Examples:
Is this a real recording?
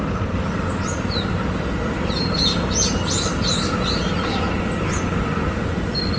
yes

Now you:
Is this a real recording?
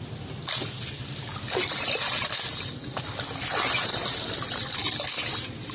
yes